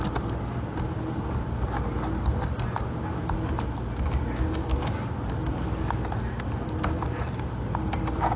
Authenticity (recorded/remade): recorded